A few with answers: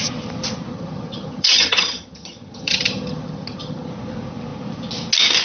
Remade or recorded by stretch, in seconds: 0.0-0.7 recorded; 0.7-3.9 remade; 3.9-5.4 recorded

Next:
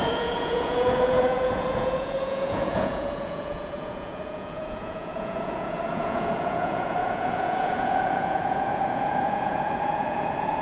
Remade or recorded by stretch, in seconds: 0.0-10.6 remade

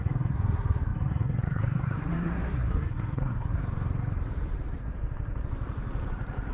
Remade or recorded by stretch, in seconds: 0.0-3.6 remade; 3.6-6.5 recorded

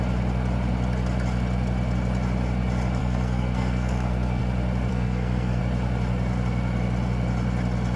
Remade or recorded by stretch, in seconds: 0.0-3.0 recorded; 3.0-4.4 remade; 4.4-4.9 recorded; 4.9-5.6 remade; 5.6-8.0 recorded

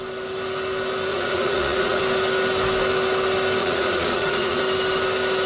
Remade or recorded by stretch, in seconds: 0.0-1.1 recorded; 1.1-2.0 remade; 2.0-3.6 recorded; 3.6-4.6 remade; 4.6-5.5 recorded

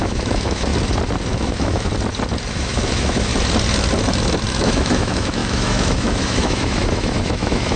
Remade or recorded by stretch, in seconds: 0.0-0.7 remade; 0.7-1.3 recorded; 1.3-1.9 remade; 1.9-2.5 recorded; 2.5-3.3 remade; 3.3-4.5 recorded; 4.5-7.8 remade

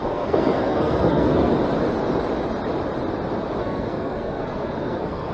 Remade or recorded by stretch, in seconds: 0.0-1.5 remade; 1.5-3.6 recorded; 3.6-5.3 remade

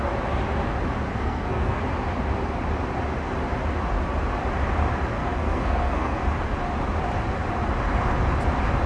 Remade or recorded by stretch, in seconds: 0.0-1.1 recorded; 1.1-1.8 remade; 1.8-5.2 recorded; 5.2-6.2 remade; 6.2-8.9 recorded